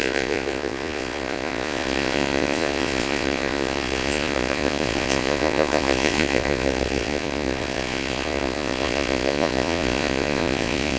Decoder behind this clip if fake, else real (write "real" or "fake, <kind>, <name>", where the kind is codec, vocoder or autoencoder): fake, vocoder, Vocos